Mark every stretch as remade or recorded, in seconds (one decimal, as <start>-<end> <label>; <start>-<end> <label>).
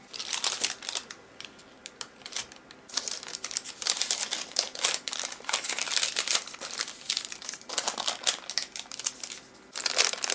0.0-10.3 recorded